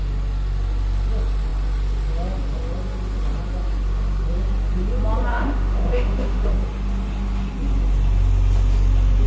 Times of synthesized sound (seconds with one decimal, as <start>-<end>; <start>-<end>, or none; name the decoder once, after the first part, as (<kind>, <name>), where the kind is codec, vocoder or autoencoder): 5.3-6.5 (autoencoder, DAC-VAE)